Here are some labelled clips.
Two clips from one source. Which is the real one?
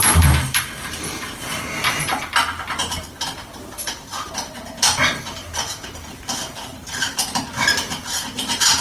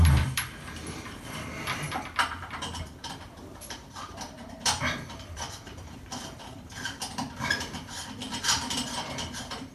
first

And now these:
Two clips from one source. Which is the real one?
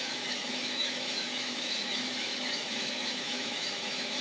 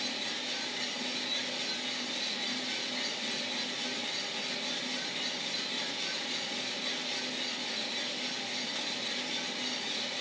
second